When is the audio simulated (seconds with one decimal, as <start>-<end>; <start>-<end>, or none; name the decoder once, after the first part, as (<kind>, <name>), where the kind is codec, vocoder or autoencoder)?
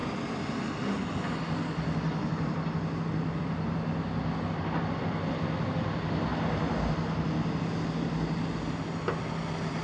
none